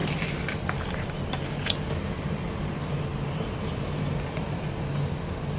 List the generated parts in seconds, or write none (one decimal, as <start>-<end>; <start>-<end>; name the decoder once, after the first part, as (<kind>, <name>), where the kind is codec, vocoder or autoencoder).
0.6-3.1 (vocoder, BigVGAN v2); 4.9-5.6

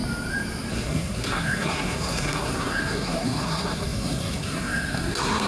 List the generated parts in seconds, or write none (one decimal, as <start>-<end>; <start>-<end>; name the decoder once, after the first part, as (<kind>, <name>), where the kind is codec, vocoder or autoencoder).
0.7-5.5 (codec, SNAC)

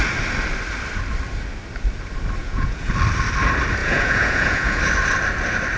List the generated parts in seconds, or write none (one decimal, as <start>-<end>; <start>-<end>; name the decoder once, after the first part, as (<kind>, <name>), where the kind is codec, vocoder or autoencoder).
2.4-2.9 (vocoder, Vocos); 3.8-4.8

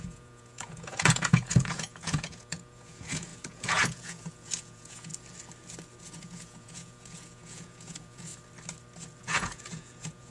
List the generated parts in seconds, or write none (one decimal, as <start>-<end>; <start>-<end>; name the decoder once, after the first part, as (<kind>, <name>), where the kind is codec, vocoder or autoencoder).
0.0-5.1 (vocoder, Vocos); 6.0-8.3; 9.2-10.3

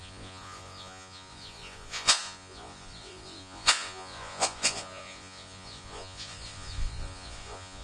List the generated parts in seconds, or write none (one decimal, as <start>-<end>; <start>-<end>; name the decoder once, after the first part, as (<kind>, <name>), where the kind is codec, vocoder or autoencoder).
0.0-7.8 (vocoder, Vocos)

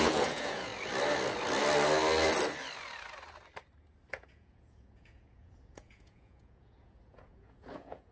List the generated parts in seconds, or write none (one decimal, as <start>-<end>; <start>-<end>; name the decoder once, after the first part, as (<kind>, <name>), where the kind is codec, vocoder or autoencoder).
0.0-0.7 (vocoder, Vocos); 4.1-8.1

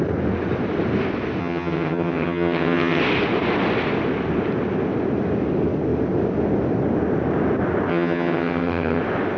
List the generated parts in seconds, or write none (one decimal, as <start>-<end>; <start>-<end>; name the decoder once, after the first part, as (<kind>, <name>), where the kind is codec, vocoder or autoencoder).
1.4-3.0 (vocoder, HiFi-GAN); 7.9-9.0